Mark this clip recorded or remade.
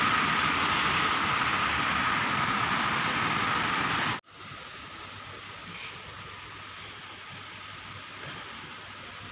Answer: recorded